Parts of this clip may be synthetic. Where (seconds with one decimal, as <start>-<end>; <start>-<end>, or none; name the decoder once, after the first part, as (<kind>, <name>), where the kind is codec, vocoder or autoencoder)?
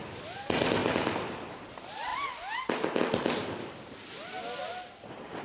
none